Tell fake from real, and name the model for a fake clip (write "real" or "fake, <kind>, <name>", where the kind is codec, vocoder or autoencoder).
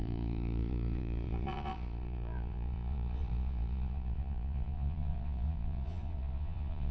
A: fake, vocoder, Vocos